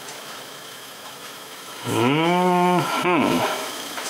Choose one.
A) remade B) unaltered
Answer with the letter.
A